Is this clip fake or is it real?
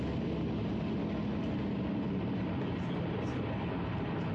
real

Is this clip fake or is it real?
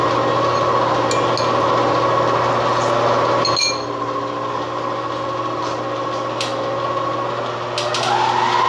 real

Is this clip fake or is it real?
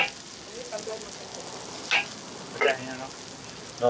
real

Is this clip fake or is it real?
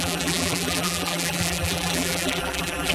fake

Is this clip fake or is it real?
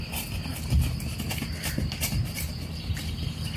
real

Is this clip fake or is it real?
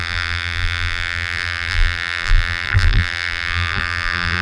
fake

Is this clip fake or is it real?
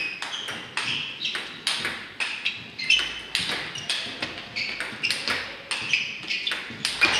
real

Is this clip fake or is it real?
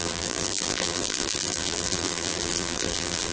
fake